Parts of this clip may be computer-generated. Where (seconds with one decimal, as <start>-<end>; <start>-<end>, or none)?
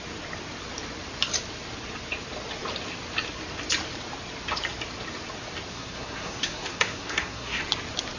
5.7-7.6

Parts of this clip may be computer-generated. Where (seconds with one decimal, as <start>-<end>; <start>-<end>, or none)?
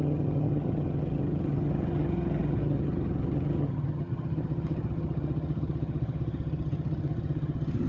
0.0-7.9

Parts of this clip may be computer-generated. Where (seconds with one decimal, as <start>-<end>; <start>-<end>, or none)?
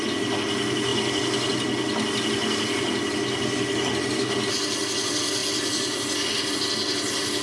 none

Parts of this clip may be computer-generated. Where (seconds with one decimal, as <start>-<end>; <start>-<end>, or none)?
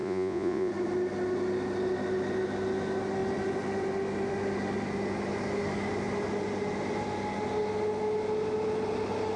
0.0-0.7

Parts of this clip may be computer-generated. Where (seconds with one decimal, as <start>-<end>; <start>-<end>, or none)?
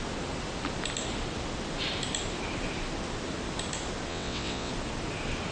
4.1-4.7